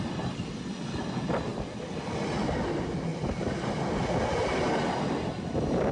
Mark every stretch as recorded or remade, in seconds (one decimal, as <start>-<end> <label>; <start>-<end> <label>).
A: 0.0-5.9 recorded